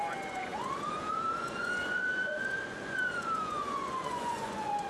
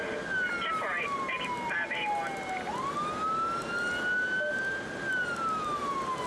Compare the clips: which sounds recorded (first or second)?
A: second